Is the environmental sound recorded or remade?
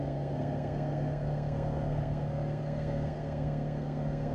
remade